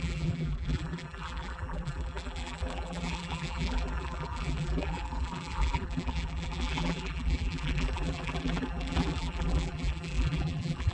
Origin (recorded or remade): remade